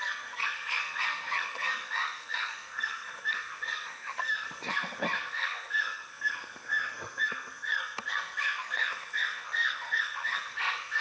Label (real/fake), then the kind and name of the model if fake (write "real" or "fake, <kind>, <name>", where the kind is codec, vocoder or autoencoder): fake, codec, SNAC